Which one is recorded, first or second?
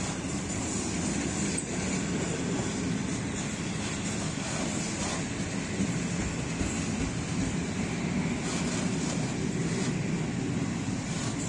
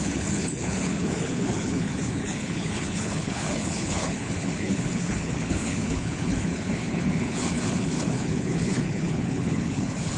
first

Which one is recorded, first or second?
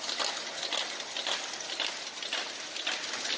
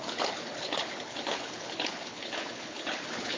first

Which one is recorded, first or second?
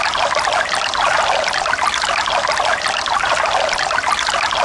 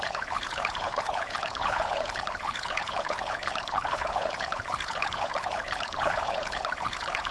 first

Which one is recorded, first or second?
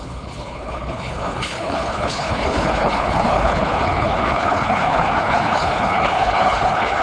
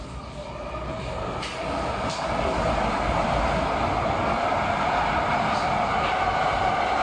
second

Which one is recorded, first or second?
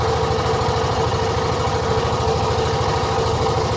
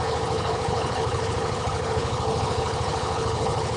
first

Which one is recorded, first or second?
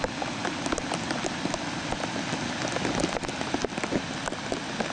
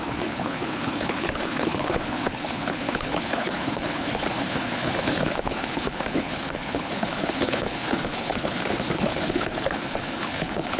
first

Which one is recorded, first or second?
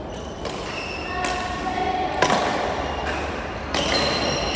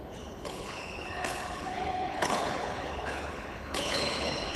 first